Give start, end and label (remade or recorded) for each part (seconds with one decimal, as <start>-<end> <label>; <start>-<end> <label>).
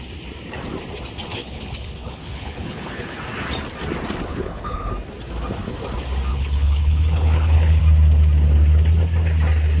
0.0-1.3 recorded; 1.3-3.2 remade; 3.2-4.3 recorded; 4.3-4.9 remade; 4.9-6.3 recorded; 6.3-7.8 remade; 7.8-9.8 recorded